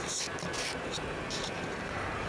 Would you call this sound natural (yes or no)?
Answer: no